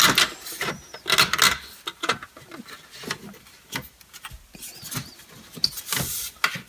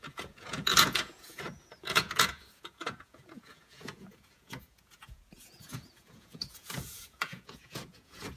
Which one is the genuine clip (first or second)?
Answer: first